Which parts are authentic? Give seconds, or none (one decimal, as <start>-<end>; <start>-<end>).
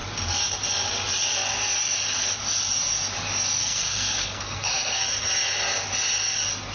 0.0-3.6; 5.0-6.7